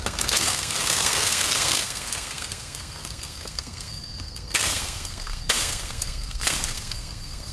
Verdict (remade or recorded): remade